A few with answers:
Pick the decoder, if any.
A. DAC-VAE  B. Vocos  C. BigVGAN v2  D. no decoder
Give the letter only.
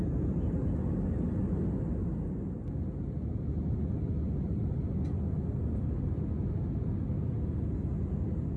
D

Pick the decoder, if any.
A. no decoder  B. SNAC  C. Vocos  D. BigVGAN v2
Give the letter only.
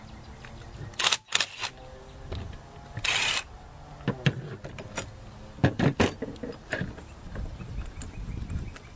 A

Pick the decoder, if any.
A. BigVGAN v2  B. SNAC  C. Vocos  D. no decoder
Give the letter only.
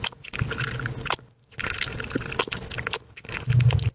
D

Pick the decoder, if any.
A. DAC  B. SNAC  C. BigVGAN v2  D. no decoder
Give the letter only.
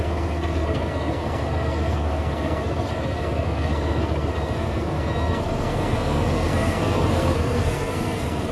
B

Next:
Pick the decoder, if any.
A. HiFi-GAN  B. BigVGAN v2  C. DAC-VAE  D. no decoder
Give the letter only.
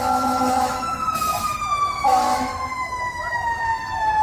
C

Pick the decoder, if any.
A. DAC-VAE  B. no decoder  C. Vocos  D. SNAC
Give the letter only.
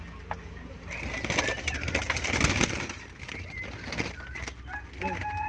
B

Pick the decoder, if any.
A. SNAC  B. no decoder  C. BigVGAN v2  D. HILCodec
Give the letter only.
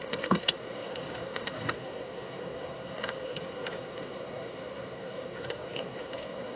A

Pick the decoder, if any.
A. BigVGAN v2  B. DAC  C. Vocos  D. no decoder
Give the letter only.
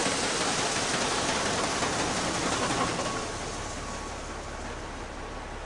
D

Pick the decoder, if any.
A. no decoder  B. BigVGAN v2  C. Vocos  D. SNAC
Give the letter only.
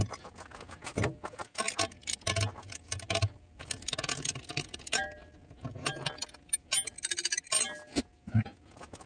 A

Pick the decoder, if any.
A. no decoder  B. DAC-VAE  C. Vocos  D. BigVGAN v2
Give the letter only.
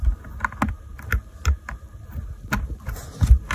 A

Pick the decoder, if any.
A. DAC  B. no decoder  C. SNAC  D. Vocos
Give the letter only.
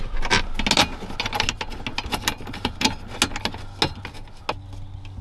B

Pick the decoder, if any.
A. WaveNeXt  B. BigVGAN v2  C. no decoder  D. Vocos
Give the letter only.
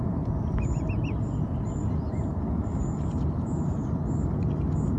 C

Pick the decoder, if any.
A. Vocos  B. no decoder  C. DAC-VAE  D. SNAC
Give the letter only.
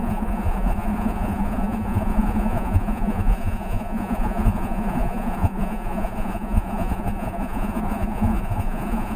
A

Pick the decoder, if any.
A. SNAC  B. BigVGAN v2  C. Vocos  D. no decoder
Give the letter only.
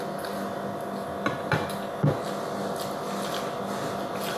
D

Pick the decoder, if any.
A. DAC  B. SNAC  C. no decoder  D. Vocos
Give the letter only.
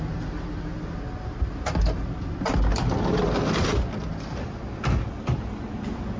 C